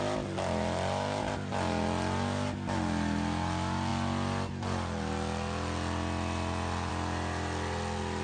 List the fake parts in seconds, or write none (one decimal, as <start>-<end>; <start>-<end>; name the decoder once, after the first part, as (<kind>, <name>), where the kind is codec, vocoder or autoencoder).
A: none